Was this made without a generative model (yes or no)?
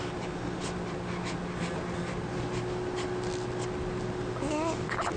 yes